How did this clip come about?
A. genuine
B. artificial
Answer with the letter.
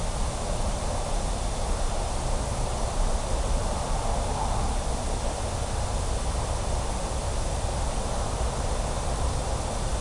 A